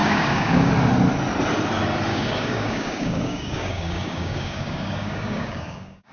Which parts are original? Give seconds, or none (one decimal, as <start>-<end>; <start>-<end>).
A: 0.7-2.1